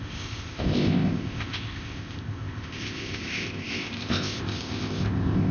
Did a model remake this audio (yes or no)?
yes